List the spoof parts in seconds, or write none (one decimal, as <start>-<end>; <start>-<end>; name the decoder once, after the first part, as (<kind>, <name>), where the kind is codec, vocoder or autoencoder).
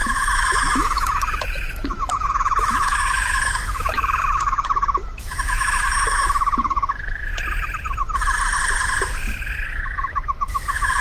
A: 0.0-7.3 (autoencoder, DAC-VAE); 9.7-11.0